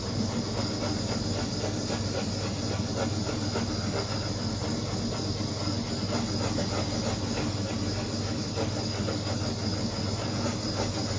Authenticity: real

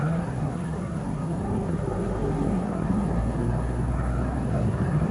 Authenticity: fake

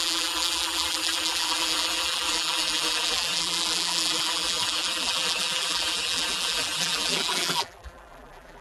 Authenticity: fake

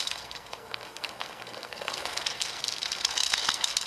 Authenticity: fake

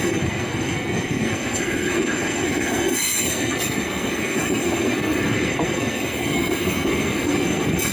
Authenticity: fake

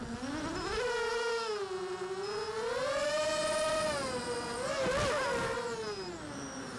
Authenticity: real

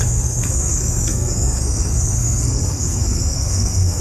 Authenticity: fake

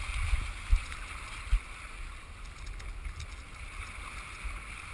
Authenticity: real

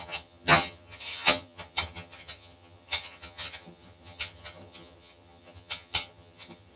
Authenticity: fake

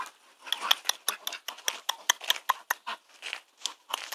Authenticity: real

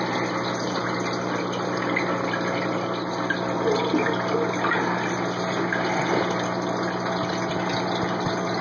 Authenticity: real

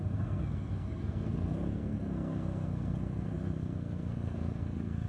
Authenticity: fake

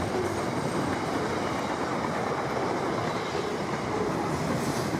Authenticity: real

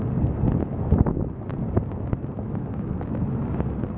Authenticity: real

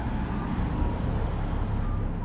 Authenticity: real